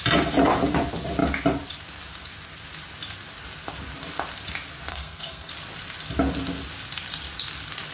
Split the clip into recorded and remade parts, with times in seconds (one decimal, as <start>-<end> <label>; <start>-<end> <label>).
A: 0.0-4.9 recorded; 4.9-5.5 remade; 5.5-7.9 recorded